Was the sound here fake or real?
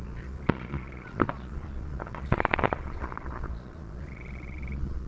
fake